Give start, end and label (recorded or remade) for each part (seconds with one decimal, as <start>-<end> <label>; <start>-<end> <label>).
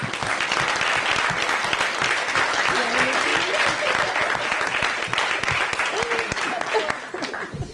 0.0-7.7 recorded